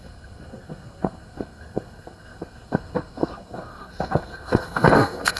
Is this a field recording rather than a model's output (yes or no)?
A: no